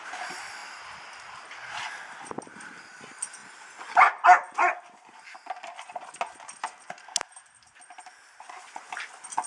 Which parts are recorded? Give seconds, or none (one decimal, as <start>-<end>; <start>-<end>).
0.0-9.5